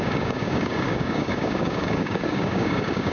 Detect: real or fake fake